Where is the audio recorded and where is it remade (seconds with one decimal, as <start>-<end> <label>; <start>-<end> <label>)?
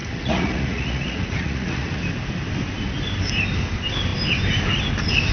0.0-2.0 remade; 2.0-5.3 recorded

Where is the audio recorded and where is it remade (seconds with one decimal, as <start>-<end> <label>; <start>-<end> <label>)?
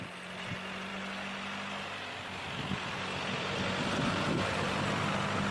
0.0-5.5 recorded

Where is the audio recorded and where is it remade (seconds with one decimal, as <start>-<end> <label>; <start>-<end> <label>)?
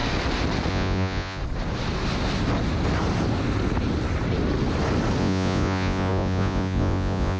0.0-0.7 recorded; 0.7-1.4 remade; 1.4-5.2 recorded; 5.2-7.4 remade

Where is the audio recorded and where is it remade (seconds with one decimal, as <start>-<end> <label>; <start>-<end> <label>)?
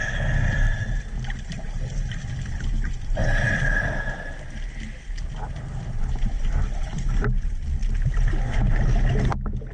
0.0-9.7 recorded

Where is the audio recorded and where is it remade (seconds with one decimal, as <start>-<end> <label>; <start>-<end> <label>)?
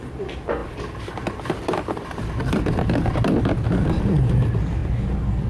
0.0-0.6 recorded; 0.6-2.6 remade; 2.6-5.5 recorded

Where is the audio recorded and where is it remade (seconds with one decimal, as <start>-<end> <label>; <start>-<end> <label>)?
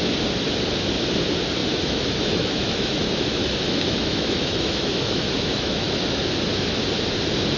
0.0-1.6 recorded; 1.6-6.2 remade; 6.2-7.6 recorded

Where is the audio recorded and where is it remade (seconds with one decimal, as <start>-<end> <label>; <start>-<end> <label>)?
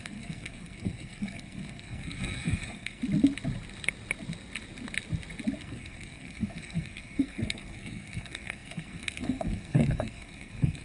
0.0-3.0 remade; 3.0-5.6 recorded; 5.6-10.8 remade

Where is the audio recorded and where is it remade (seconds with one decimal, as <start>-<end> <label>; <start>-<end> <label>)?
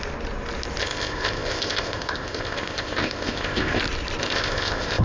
0.0-0.8 recorded; 0.8-3.8 remade; 3.8-4.2 recorded; 4.2-5.0 remade